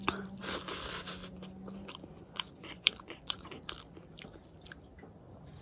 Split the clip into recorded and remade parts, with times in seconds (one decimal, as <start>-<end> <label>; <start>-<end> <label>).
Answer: 0.0-2.1 recorded; 2.1-3.6 remade; 3.6-5.6 recorded